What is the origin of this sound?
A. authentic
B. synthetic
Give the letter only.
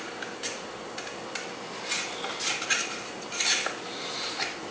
A